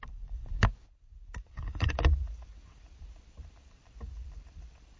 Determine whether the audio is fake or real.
fake